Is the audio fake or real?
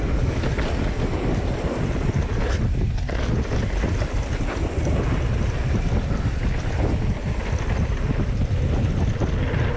real